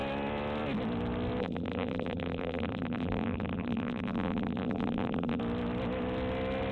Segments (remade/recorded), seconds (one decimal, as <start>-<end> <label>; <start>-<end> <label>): 0.0-1.4 recorded; 1.4-5.4 remade; 5.4-6.7 recorded